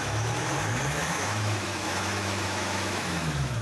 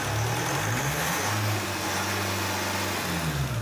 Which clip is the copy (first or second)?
first